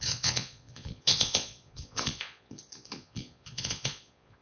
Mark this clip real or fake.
fake